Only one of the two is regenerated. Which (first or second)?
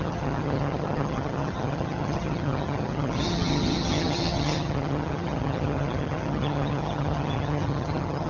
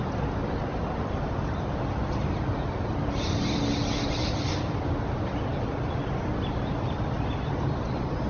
first